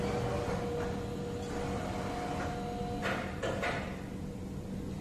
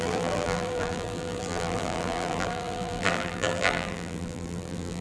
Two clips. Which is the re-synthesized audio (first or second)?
second